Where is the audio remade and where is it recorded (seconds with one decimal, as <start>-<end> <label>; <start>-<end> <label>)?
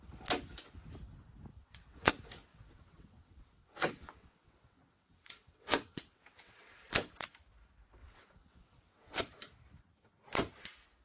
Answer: 0.0-1.5 recorded; 1.5-2.1 remade; 2.1-2.5 recorded; 2.5-6.5 remade; 6.5-8.0 recorded; 8.0-9.2 remade; 9.2-11.0 recorded